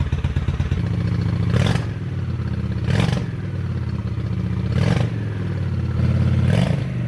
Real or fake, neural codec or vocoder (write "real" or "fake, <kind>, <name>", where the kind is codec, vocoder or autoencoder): real